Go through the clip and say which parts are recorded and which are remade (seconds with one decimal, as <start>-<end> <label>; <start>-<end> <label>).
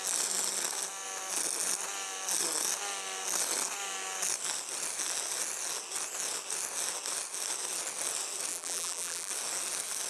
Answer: 0.0-8.5 recorded; 8.5-9.3 remade; 9.3-10.1 recorded